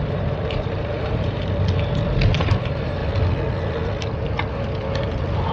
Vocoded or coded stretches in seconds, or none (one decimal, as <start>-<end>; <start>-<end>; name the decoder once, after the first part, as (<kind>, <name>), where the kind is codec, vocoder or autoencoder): 0.0-1.4 (vocoder, BigVGAN v2); 2.5-3.0

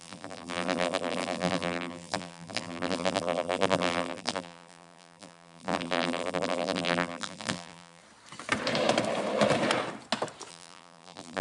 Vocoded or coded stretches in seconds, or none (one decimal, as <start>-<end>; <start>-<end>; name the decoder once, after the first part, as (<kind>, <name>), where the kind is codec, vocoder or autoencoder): 0.0-8.0 (vocoder, BigVGAN v2); 10.5-11.4

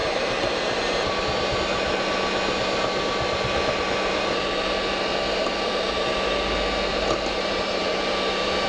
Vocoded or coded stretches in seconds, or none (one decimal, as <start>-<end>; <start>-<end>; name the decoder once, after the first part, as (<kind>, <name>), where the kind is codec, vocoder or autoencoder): 0.0-1.2 (vocoder, BigVGAN v2); 6.9-7.8

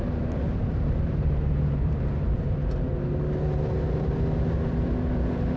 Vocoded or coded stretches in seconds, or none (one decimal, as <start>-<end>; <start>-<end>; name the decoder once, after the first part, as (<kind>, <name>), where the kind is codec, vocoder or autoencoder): 0.0-5.6 (vocoder, BigVGAN v2)

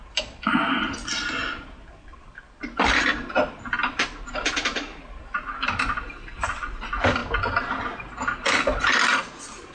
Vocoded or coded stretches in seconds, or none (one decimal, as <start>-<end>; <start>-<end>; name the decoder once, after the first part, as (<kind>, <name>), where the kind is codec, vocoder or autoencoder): 0.0-7.2 (vocoder, BigVGAN v2); 8.8-9.7